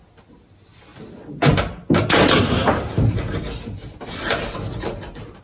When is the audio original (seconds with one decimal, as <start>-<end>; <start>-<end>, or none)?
0.0-5.4